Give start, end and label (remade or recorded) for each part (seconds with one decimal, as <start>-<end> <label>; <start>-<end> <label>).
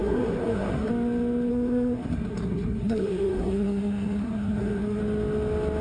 0.0-0.9 remade; 0.9-1.5 recorded; 1.5-5.0 remade; 5.0-5.8 recorded